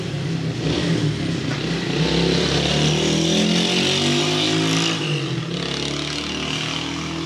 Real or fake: real